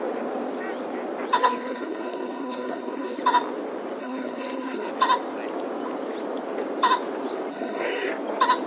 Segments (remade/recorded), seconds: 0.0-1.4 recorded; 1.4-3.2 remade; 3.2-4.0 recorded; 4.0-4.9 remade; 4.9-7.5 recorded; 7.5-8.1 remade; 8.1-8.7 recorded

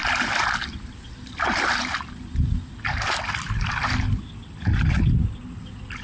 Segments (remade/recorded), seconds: 0.0-6.0 recorded

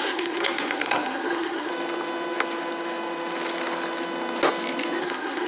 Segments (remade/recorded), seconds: 0.0-1.7 remade; 1.7-5.0 recorded; 5.0-5.5 remade

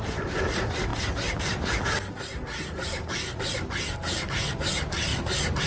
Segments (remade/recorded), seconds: 0.0-5.1 recorded; 5.1-5.7 remade

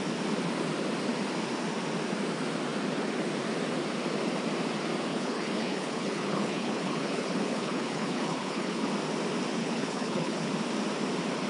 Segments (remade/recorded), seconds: 0.0-5.1 recorded; 5.1-8.9 remade; 8.9-9.6 recorded; 9.6-10.5 remade; 10.5-11.5 recorded

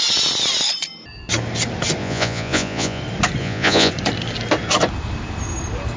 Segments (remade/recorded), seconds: 0.0-2.0 recorded; 2.0-3.0 remade; 3.0-3.4 recorded; 3.4-3.9 remade; 3.9-6.0 recorded